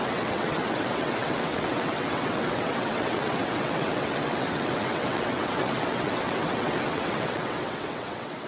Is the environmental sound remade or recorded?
remade